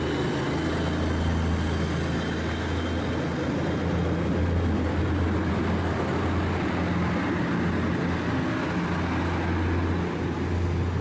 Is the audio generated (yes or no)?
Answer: no